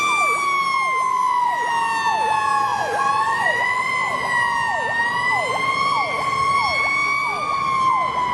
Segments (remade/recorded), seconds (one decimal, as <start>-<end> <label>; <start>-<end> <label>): 0.0-1.1 recorded; 1.1-1.7 remade; 1.7-2.7 recorded; 2.7-3.9 remade; 3.9-8.3 recorded